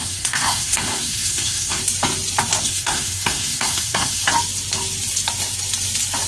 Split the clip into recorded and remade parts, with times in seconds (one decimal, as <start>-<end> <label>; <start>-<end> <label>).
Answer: 0.0-1.8 remade; 1.8-2.6 recorded; 2.6-4.2 remade; 4.2-6.3 recorded